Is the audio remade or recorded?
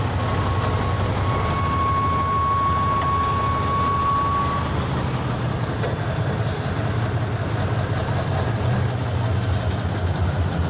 recorded